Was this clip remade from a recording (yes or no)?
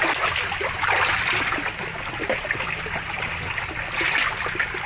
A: no